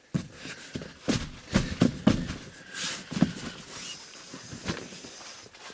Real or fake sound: real